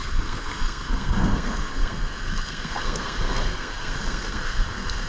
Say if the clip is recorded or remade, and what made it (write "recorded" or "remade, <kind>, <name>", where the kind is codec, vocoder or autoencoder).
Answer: remade, codec, SNAC